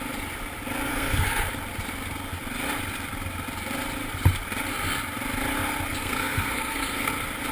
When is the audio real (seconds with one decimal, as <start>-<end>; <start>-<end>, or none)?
0.0-0.9; 1.5-6.0; 7.1-7.5